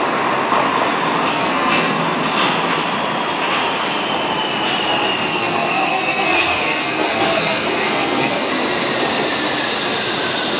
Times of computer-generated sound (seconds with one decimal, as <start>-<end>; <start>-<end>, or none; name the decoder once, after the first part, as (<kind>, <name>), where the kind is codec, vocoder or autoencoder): 1.3-2.0 (codec, SNAC); 5.3-8.5